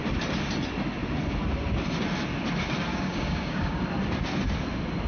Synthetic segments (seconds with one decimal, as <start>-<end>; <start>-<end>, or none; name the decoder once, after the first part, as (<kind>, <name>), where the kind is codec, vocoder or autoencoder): 2.9-3.8 (codec, DAC)